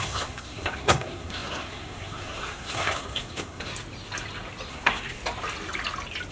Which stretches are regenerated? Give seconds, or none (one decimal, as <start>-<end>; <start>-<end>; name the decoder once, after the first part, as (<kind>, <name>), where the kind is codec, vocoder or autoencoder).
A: 0.0-3.7 (codec, SNAC); 4.7-5.2